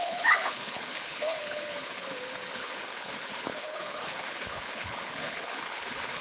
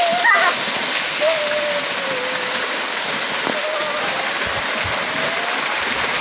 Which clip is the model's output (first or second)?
first